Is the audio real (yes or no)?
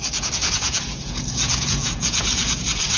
no